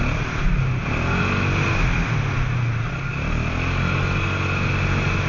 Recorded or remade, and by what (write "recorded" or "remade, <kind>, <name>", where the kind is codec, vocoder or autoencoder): recorded